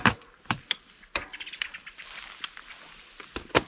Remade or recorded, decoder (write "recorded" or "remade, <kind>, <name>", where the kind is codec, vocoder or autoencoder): remade, vocoder, BigVGAN v2